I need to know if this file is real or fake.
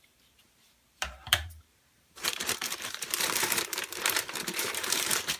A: fake